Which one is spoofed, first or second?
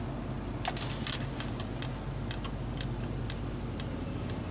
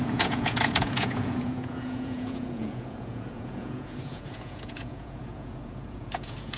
second